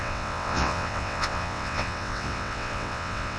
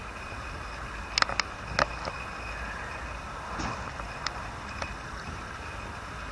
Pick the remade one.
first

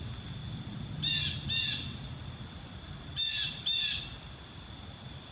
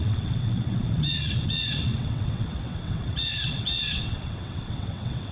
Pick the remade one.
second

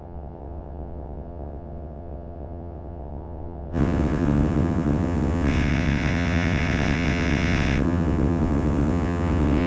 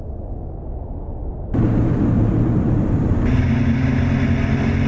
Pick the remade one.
first